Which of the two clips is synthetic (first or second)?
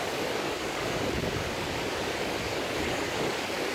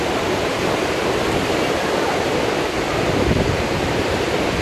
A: first